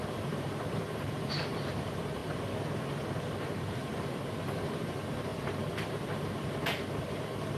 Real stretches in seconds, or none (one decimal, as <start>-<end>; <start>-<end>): 2.2-3.4